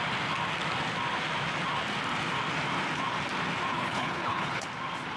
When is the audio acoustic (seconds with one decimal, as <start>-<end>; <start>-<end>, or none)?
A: 0.0-3.7; 4.7-5.2